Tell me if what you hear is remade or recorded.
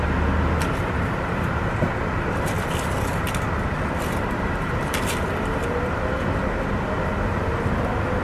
recorded